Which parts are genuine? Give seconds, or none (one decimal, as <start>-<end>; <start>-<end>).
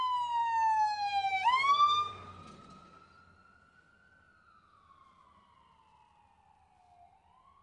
0.0-0.4; 2.1-7.6